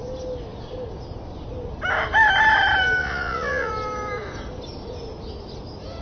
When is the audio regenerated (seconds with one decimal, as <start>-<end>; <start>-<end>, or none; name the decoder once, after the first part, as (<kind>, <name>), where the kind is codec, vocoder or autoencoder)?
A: 3.0-3.7 (vocoder, Vocos)